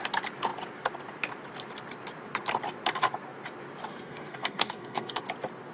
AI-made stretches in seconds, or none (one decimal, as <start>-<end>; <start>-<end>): 3.9-5.2